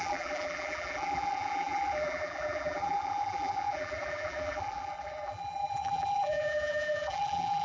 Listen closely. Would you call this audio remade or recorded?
remade